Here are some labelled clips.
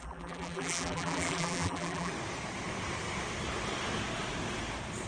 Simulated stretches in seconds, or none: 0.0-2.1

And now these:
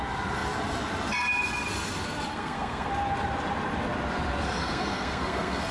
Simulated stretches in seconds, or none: 2.3-2.9; 4.6-5.7

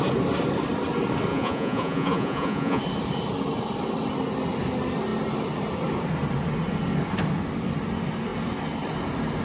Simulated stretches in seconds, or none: 1.3-2.8